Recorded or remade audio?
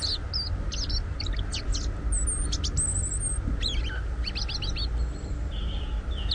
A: recorded